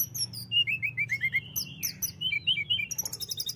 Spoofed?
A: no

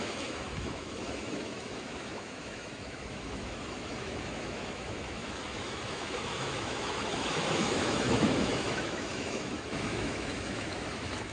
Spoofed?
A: yes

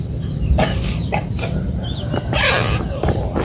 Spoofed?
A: no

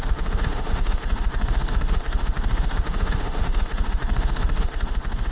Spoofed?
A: yes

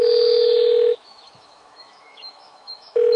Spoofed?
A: yes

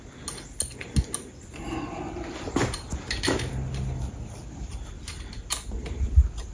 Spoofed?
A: no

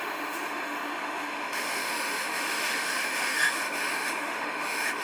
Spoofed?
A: yes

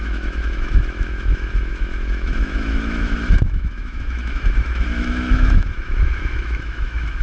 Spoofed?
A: yes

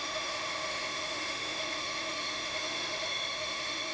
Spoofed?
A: yes